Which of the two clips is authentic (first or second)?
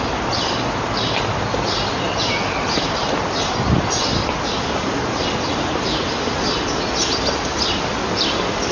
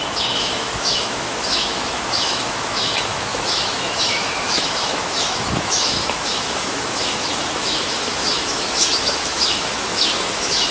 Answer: first